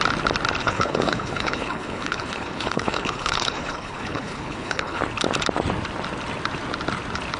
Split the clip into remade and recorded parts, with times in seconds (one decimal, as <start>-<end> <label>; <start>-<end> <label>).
0.0-0.6 recorded; 0.6-5.0 remade; 5.0-7.4 recorded

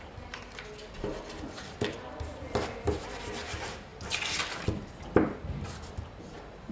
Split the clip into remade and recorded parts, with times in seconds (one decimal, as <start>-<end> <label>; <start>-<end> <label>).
0.0-6.7 recorded

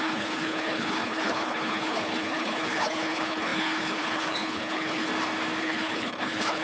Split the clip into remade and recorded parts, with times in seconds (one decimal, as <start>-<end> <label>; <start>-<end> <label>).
0.0-5.1 remade; 5.1-5.6 recorded; 5.6-6.6 remade

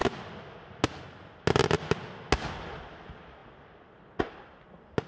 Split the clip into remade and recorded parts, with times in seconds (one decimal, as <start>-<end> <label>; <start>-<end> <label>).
0.0-5.1 recorded

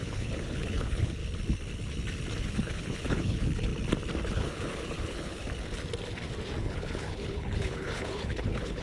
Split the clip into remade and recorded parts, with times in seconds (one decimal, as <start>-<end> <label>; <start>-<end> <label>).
0.0-1.2 remade; 1.2-2.4 recorded; 2.4-3.7 remade; 3.7-4.3 recorded; 4.3-5.4 remade; 5.4-6.6 recorded; 6.6-8.8 remade

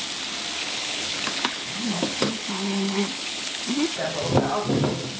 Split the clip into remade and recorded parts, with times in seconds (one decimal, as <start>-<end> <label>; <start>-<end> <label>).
0.0-0.6 recorded; 0.6-3.7 remade; 3.7-5.2 recorded

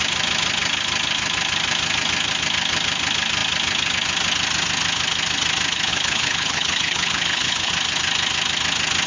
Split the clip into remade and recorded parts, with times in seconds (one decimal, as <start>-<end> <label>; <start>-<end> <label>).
0.0-5.9 recorded; 5.9-7.7 remade; 7.7-9.1 recorded